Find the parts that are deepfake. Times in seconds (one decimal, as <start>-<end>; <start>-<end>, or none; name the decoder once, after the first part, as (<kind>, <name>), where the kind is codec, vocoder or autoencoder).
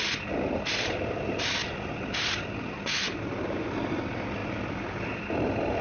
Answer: none